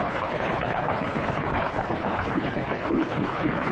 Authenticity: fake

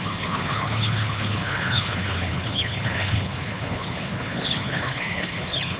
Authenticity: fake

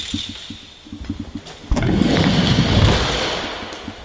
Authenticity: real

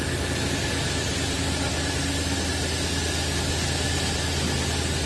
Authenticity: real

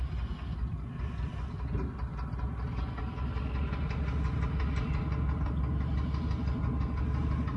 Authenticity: real